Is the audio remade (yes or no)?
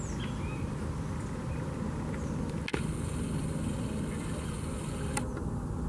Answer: no